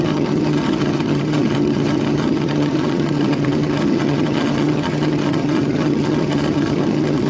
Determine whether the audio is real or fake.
fake